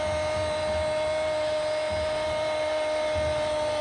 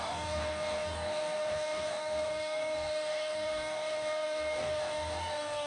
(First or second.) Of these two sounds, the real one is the first